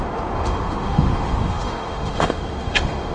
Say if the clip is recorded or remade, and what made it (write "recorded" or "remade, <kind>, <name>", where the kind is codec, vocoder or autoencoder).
remade, autoencoder, DAC-VAE